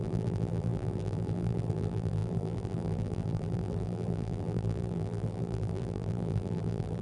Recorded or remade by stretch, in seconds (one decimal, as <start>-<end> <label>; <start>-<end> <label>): 0.0-7.0 remade